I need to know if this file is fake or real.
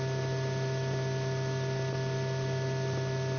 real